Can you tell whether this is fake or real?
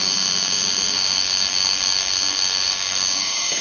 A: fake